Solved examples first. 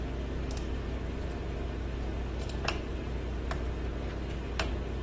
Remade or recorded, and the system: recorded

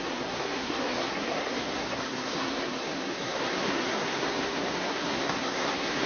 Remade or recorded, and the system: remade, codec, SNAC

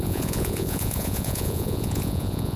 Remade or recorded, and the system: remade, vocoder, Vocos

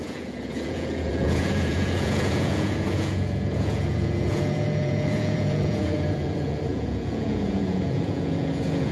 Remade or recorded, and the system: remade, vocoder, Vocos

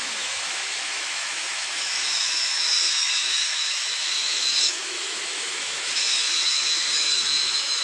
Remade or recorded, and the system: remade, autoencoder, DAC-VAE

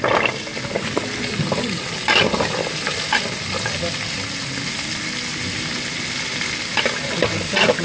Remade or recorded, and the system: recorded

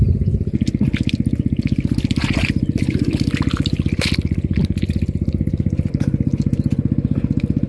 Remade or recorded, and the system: recorded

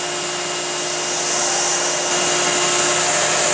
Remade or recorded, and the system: recorded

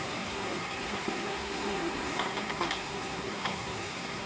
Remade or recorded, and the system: remade, codec, SNAC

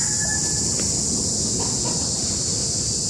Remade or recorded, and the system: recorded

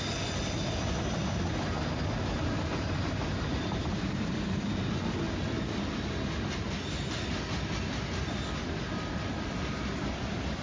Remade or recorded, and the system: recorded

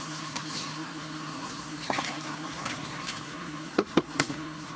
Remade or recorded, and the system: remade, codec, SNAC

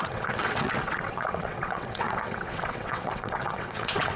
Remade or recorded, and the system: remade, vocoder, WaveNeXt